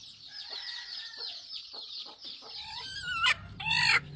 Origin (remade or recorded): recorded